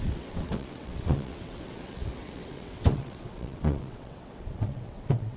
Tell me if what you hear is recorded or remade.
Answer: remade